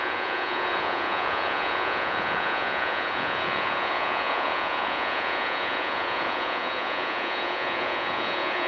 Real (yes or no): no